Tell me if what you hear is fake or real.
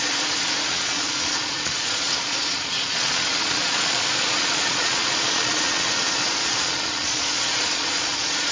fake